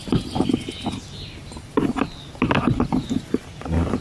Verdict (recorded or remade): recorded